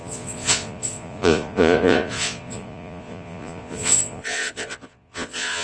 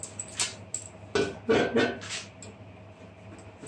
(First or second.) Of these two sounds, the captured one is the second